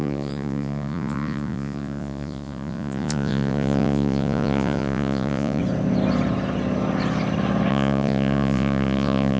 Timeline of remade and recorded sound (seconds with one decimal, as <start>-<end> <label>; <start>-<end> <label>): 0.0-5.6 remade; 5.6-7.7 recorded; 7.7-9.4 remade